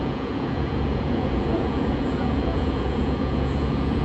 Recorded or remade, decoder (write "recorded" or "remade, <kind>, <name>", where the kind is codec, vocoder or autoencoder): remade, vocoder, Vocos